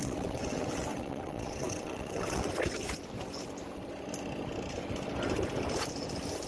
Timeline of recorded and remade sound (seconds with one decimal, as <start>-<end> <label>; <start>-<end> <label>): 0.0-2.5 remade; 2.5-6.5 recorded